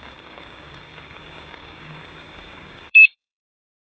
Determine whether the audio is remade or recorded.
remade